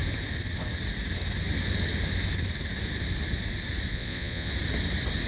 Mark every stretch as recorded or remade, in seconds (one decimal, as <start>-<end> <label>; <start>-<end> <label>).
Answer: 0.0-3.9 recorded; 3.9-4.5 remade; 4.5-5.3 recorded